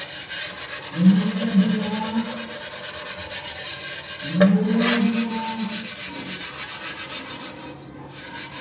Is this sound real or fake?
real